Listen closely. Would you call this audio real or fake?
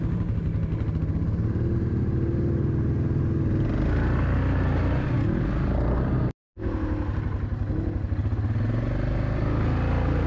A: real